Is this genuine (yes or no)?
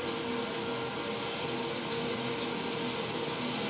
yes